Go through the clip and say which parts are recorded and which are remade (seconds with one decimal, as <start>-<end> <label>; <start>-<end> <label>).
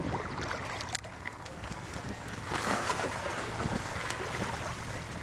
0.0-1.1 recorded; 1.1-4.2 remade; 4.2-5.2 recorded